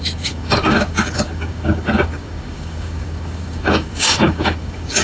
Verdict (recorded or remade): remade